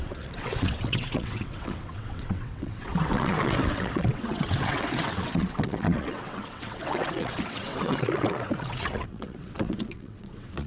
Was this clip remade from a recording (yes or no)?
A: yes